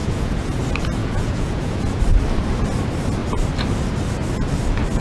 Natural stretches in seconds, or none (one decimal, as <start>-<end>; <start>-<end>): 0.6-1.0; 2.0-5.0